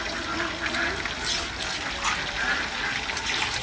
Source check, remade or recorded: recorded